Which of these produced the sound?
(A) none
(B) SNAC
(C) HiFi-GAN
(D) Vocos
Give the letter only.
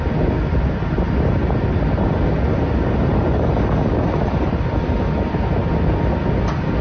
A